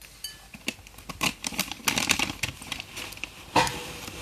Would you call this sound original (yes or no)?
no